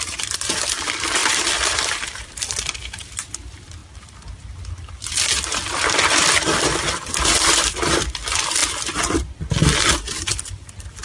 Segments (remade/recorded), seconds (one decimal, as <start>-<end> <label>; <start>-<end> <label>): 0.0-3.8 remade; 3.8-7.1 recorded; 7.1-11.0 remade